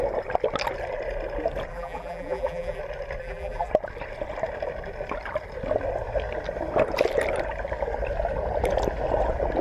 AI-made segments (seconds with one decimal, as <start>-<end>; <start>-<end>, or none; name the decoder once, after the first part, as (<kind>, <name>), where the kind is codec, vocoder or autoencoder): 1.7-2.8 (vocoder, BigVGAN v2); 3.2-3.7